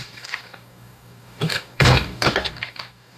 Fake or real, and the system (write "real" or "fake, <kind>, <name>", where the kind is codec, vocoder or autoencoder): fake, codec, DAC